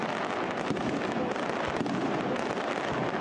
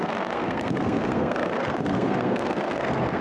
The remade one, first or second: second